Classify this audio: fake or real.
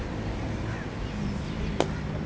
real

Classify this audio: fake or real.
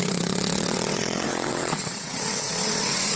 fake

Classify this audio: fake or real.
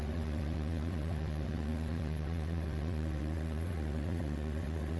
fake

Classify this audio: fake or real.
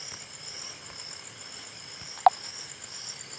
real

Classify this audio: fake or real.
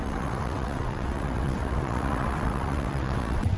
fake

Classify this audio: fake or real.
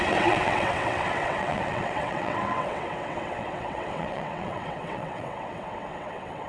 fake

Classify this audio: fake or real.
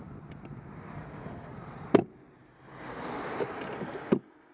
real